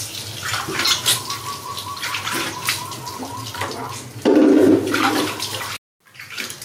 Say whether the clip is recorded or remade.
recorded